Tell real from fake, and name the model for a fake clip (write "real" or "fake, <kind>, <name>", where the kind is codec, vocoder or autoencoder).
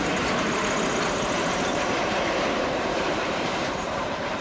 fake, vocoder, BigVGAN v2